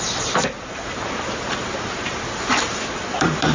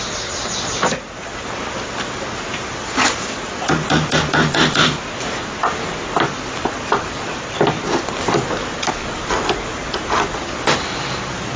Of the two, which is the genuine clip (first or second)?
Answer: second